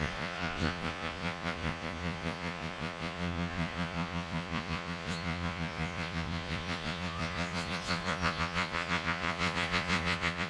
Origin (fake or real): fake